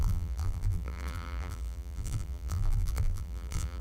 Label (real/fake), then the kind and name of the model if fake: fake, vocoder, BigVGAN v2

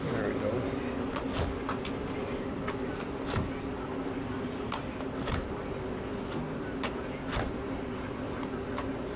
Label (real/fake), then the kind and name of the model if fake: real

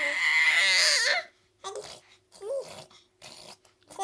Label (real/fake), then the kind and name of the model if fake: real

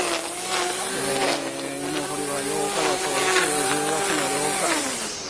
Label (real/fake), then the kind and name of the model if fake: real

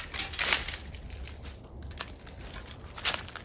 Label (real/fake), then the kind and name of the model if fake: real